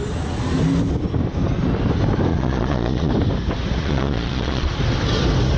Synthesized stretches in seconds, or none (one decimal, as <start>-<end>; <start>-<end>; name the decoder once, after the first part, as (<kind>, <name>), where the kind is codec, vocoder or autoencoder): 2.3-3.1 (vocoder, Vocos); 3.8-4.7